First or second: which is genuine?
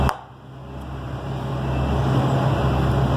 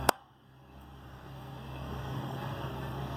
first